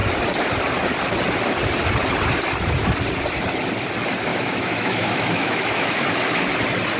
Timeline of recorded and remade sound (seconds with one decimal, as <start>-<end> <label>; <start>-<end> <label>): 0.0-4.3 recorded; 4.3-6.5 remade; 6.5-7.0 recorded